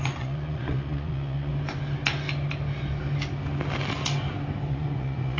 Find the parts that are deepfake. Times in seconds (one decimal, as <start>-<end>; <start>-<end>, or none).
0.0-1.5; 4.7-5.4